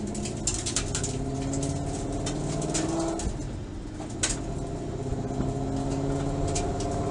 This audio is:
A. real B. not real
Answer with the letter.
A